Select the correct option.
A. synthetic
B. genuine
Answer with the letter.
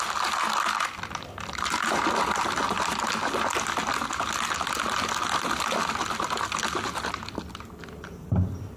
B